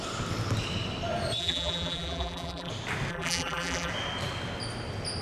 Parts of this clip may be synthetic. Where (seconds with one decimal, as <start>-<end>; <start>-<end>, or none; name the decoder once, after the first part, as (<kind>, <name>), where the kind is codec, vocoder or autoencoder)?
1.4-2.7 (vocoder, BigVGAN v2); 3.1-3.9